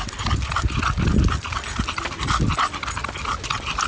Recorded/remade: recorded